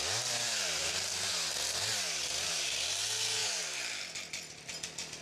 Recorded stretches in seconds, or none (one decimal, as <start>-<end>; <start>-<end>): 0.0-5.2